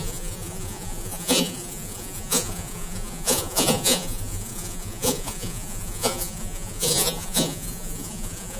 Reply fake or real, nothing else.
fake